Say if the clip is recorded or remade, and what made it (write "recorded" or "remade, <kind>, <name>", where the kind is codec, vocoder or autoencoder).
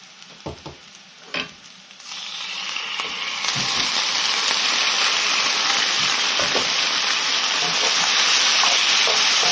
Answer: recorded